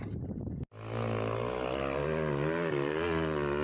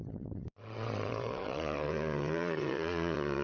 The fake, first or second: second